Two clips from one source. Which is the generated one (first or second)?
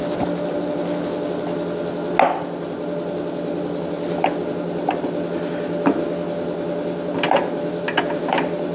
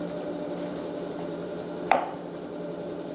second